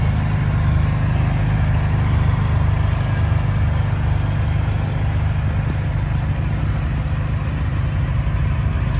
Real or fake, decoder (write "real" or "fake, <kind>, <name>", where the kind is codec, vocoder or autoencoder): real